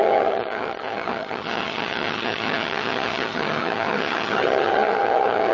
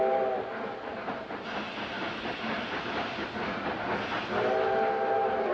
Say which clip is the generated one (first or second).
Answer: first